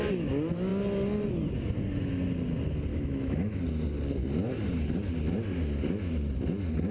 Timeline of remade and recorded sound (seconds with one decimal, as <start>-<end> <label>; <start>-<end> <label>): 0.0-2.9 recorded; 2.9-3.6 remade; 3.6-6.9 recorded